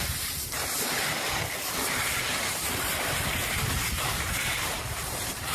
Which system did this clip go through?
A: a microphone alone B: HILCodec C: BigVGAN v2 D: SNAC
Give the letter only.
C